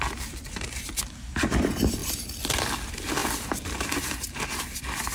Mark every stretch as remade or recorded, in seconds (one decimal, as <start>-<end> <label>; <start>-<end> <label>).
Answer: 0.0-3.2 recorded; 3.2-4.4 remade; 4.4-5.1 recorded